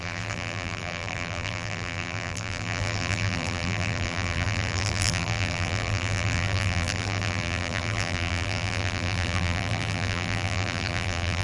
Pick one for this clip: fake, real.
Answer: fake